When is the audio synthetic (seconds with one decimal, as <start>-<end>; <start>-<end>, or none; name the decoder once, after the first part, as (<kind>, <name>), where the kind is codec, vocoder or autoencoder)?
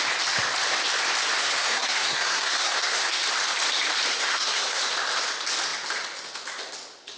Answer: 1.4-3.2 (codec, SNAC); 4.1-4.8